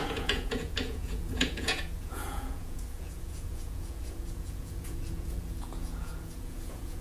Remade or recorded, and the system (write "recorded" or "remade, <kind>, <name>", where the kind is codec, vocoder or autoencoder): remade, vocoder, Vocos